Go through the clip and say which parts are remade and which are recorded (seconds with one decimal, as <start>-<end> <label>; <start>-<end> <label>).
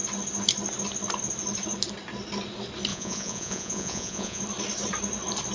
0.0-2.9 recorded; 2.9-4.4 remade; 4.4-5.5 recorded